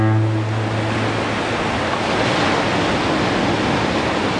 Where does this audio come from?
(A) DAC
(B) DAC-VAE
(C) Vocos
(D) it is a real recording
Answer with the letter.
D